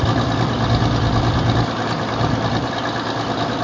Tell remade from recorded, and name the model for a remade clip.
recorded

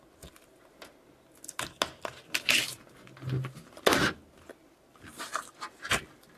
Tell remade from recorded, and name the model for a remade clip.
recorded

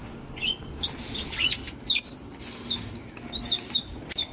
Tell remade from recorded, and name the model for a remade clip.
recorded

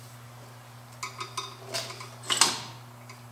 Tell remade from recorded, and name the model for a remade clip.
recorded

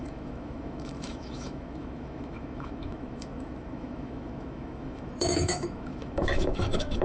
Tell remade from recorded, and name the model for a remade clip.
remade, autoencoder, DAC-VAE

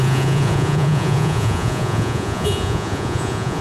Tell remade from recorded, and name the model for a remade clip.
remade, vocoder, Vocos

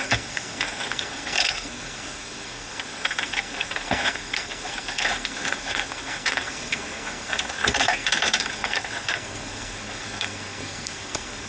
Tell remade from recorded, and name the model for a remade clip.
remade, codec, SNAC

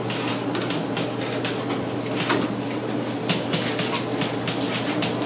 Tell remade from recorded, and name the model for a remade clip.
recorded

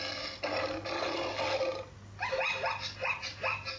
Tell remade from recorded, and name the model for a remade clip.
recorded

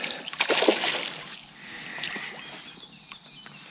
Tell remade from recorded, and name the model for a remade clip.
recorded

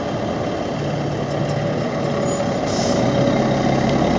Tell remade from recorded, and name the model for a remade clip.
recorded